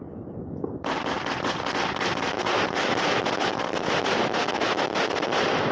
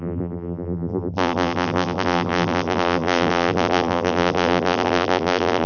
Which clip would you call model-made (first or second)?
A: second